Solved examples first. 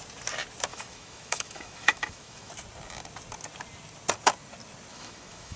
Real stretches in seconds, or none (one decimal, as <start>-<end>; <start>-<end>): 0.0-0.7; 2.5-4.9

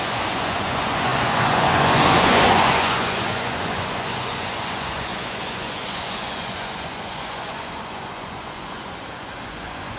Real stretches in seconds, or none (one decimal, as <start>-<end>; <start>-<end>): none

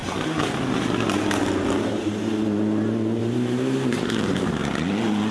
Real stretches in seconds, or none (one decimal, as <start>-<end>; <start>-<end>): 0.0-3.2; 4.6-5.3